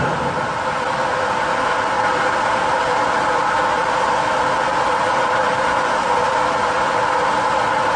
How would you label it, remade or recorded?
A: recorded